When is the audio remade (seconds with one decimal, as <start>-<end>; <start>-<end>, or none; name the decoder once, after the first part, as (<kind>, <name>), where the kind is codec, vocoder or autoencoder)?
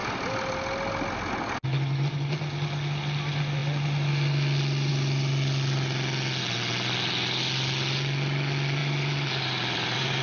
0.0-0.5 (vocoder, BigVGAN v2); 8.8-10.2